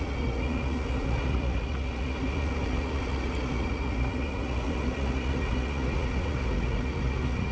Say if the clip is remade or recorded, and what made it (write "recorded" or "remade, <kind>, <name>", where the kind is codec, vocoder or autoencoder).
remade, vocoder, Vocos